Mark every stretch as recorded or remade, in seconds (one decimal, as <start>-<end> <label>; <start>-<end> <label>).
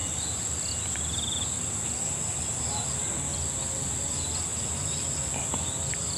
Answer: 0.0-6.2 recorded